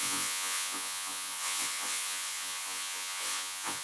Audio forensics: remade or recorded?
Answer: remade